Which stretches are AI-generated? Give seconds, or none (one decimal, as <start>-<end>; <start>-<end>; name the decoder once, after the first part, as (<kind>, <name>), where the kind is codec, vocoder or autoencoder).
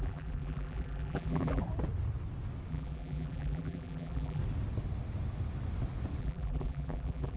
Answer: 0.0-1.6 (vocoder, BigVGAN v2); 2.7-4.4; 6.2-7.4